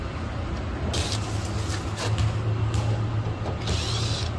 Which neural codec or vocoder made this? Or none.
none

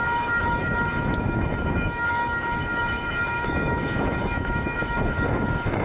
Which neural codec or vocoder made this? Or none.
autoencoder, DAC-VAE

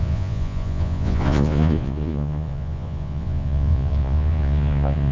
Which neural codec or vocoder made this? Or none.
vocoder, Vocos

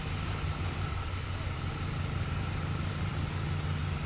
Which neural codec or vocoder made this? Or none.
none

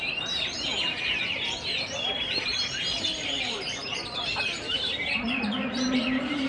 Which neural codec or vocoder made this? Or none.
vocoder, BigVGAN v2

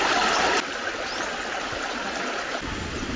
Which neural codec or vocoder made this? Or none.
none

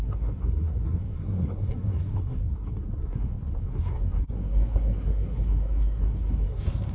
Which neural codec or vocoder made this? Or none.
codec, SNAC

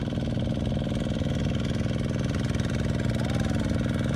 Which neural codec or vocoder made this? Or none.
none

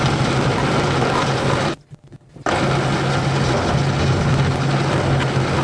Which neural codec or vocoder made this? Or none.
none